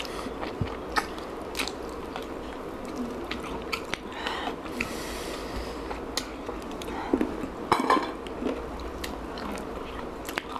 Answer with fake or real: real